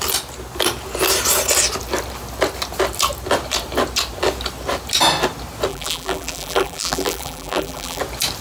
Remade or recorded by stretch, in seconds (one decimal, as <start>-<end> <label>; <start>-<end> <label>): 0.0-5.7 recorded; 5.7-8.0 remade; 8.0-8.4 recorded